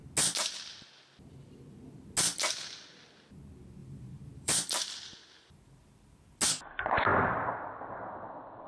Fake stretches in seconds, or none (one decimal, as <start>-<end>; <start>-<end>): 3.8-6.4; 7.1-7.8